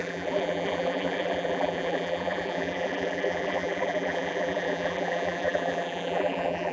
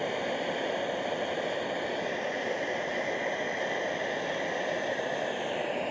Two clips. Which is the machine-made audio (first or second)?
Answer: first